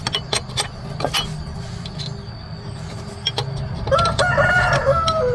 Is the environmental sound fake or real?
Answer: real